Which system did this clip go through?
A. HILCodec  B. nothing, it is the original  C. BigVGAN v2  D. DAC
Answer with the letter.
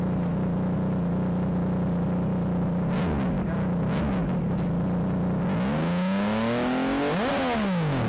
B